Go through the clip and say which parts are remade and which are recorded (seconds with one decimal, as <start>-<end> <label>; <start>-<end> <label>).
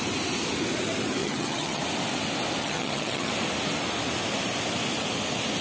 0.0-1.2 recorded; 1.2-1.8 remade; 1.8-2.6 recorded; 2.6-3.3 remade; 3.3-5.6 recorded